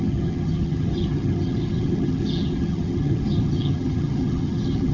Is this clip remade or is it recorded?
remade